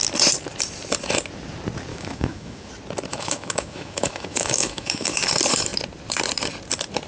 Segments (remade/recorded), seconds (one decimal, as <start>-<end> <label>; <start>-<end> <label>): 0.0-1.9 recorded; 1.9-2.7 remade; 2.7-3.1 recorded; 3.1-5.2 remade; 5.2-7.1 recorded